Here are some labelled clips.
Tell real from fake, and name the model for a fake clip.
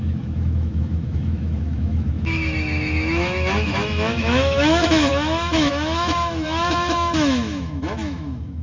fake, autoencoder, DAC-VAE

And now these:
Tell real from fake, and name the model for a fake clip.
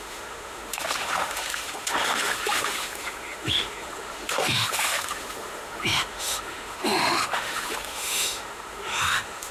fake, autoencoder, DAC-VAE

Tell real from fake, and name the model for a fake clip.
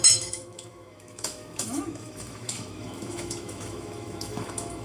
fake, autoencoder, DAC-VAE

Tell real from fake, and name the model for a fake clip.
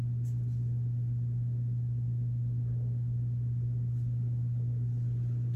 real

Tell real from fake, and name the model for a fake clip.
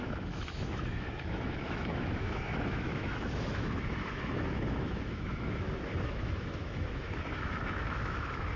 fake, autoencoder, DAC-VAE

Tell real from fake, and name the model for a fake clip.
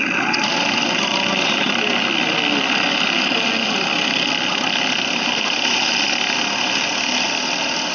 real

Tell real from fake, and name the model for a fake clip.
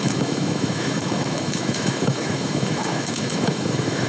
fake, autoencoder, DAC-VAE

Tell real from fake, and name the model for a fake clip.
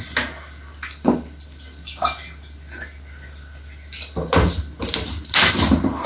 real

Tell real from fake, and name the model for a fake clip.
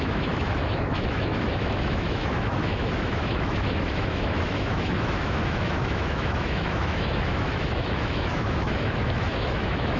fake, autoencoder, DAC-VAE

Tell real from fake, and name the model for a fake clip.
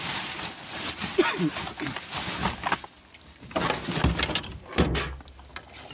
real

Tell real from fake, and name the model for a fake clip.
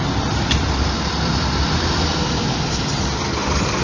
real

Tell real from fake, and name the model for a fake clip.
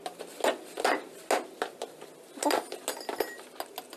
real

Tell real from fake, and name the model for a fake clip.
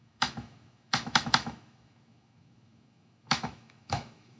fake, autoencoder, DAC-VAE